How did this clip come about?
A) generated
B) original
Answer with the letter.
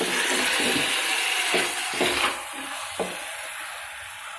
B